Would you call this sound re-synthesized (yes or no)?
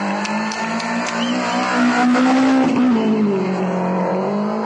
no